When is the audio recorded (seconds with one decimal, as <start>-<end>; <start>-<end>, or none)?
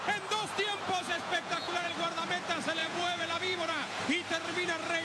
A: 0.0-1.0; 1.9-2.8; 4.0-5.0